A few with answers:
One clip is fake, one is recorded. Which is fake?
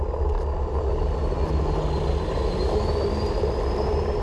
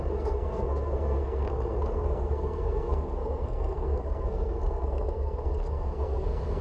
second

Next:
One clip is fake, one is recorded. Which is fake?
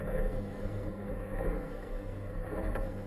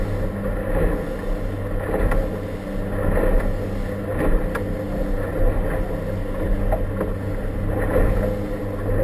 first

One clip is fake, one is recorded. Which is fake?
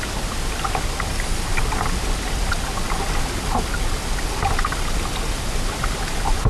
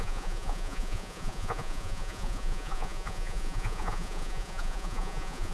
second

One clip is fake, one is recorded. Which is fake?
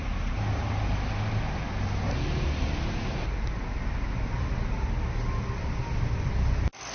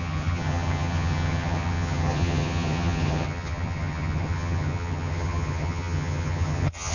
second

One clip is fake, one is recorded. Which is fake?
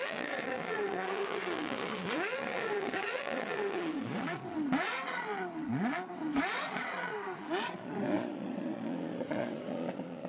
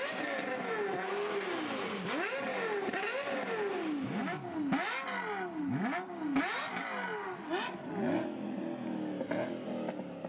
first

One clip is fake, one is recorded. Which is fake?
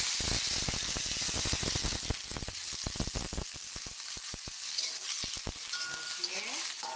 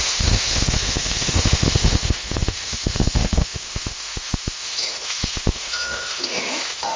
second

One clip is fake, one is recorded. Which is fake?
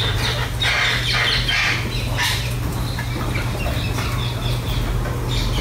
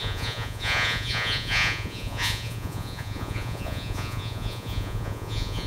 second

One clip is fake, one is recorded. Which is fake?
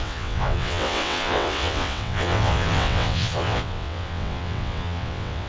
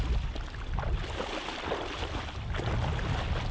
first